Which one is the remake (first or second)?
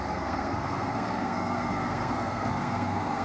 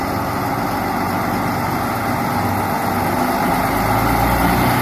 first